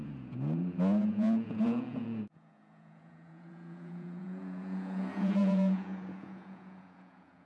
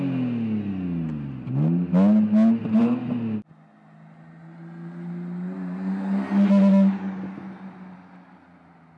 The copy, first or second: first